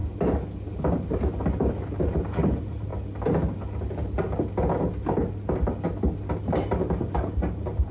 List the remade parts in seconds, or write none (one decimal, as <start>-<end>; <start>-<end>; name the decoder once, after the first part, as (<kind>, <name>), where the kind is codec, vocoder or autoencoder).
2.0-2.9 (vocoder, BigVGAN v2); 6.4-7.9